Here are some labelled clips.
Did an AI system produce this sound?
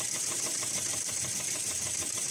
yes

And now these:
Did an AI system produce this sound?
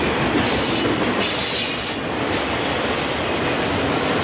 no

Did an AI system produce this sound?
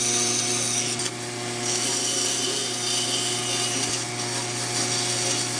no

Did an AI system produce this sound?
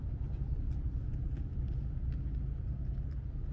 no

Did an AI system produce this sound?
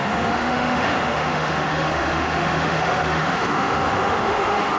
yes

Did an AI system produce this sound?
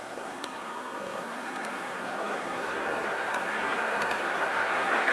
yes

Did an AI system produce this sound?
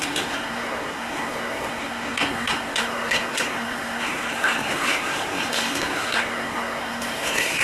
yes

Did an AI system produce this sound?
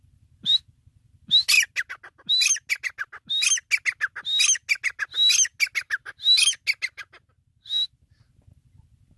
no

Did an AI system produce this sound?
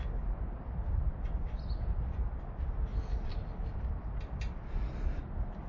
no